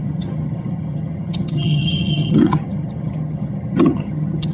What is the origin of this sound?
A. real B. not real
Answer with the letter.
B